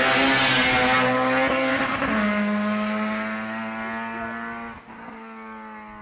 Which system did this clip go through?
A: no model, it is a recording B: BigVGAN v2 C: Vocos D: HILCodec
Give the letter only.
A